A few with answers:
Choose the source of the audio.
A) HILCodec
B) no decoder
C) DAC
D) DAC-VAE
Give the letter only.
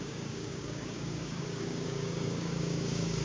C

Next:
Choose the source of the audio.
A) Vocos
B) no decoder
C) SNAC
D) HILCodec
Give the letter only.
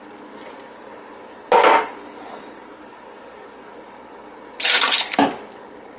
B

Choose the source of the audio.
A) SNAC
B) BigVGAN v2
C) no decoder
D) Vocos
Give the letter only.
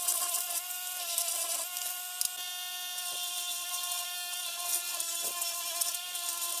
C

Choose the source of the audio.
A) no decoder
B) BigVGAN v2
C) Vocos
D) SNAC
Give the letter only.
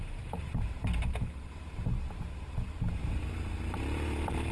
B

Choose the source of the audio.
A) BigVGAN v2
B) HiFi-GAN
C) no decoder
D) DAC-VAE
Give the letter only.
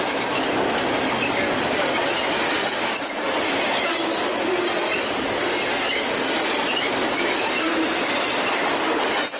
C